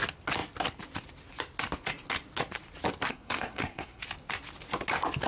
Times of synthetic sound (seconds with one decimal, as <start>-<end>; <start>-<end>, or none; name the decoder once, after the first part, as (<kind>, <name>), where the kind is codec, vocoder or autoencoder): 3.1-4.0 (codec, SNAC)